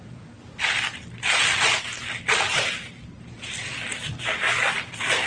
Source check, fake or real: real